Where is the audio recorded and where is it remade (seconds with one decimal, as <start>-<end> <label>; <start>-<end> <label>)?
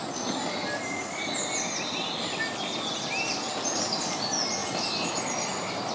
0.0-5.9 recorded